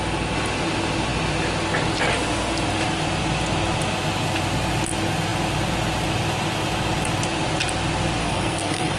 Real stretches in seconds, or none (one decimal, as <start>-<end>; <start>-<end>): 0.0-8.2